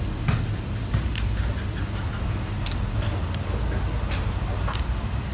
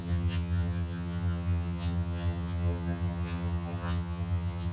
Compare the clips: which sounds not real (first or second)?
second